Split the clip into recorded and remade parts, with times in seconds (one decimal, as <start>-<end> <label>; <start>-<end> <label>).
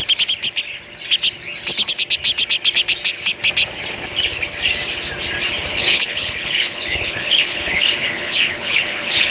0.0-5.7 recorded; 5.7-9.3 remade